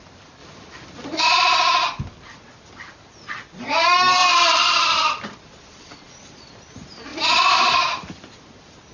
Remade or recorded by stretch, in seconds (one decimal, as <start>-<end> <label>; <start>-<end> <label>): 0.0-0.4 recorded; 0.4-1.2 remade; 1.2-4.2 recorded; 4.2-6.5 remade; 6.5-7.1 recorded; 7.1-8.3 remade; 8.3-8.9 recorded